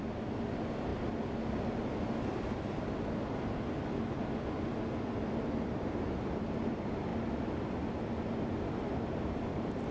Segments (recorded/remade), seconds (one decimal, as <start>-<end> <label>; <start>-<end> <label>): 0.0-9.9 recorded